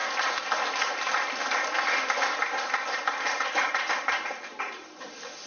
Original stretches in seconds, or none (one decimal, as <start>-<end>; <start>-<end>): 0.0-2.4; 5.1-5.5

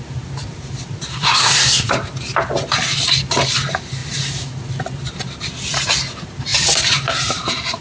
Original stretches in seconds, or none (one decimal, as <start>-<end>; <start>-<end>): 0.0-1.1; 1.9-7.8